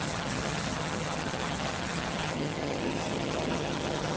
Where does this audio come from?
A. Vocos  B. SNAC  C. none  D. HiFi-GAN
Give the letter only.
D